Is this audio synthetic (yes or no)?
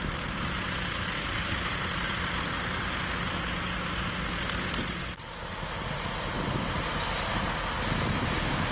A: no